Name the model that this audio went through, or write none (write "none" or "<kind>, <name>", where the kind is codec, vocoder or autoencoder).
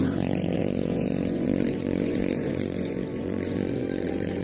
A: vocoder, Vocos